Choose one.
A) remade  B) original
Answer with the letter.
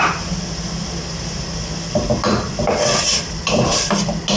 B